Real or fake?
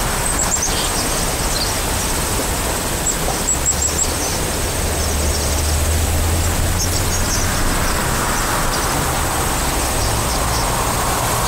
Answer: real